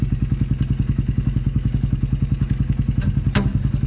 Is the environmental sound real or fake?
real